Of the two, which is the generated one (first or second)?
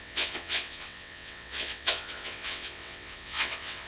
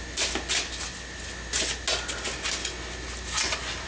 first